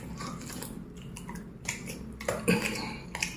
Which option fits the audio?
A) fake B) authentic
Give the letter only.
B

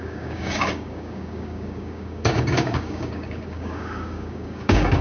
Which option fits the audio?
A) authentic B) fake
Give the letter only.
B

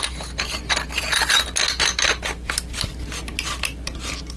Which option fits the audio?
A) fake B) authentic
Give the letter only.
B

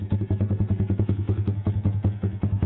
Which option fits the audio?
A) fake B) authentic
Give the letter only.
A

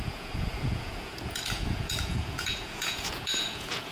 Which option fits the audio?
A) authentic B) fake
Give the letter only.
B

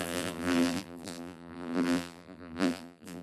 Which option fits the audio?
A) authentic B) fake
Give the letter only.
B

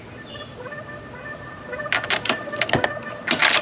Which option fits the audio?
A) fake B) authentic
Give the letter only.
B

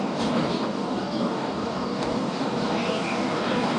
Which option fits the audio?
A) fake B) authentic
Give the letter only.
A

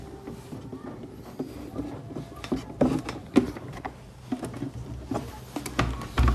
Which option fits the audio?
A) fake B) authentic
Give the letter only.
B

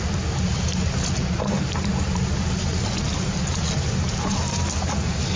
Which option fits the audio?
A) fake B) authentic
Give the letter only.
B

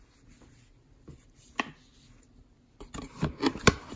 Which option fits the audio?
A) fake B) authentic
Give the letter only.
B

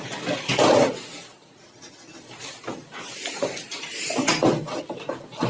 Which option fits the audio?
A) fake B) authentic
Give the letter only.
B